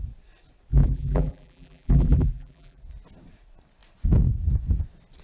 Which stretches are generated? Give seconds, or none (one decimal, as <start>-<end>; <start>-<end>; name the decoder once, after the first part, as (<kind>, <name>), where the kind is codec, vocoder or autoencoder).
0.7-2.8 (vocoder, BigVGAN v2)